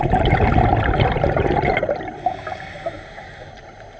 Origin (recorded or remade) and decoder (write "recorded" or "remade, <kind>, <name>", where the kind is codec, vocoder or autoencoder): recorded